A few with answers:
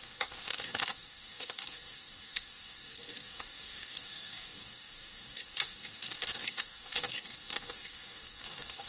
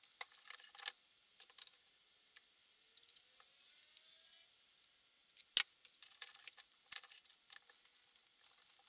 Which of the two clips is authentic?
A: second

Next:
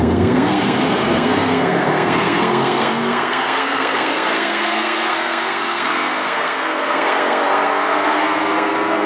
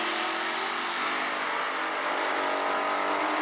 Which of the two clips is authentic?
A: second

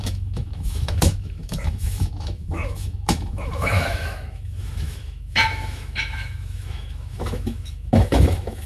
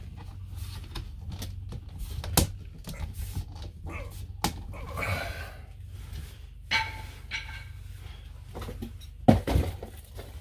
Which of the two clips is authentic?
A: second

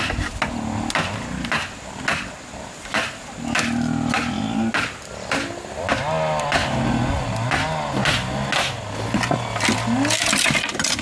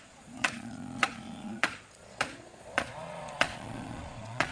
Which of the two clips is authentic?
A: first